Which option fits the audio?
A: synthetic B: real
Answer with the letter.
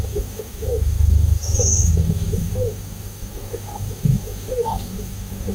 A